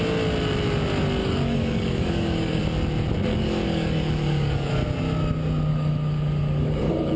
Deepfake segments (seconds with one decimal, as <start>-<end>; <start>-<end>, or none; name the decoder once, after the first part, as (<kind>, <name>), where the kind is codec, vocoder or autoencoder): 1.2-2.6 (codec, DAC); 3.3-4.7; 5.7-7.2